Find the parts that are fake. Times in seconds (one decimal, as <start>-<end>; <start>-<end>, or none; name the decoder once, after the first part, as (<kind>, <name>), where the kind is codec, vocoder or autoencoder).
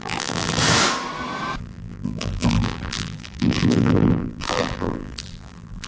0.0-0.6 (vocoder, BigVGAN v2); 1.6-5.9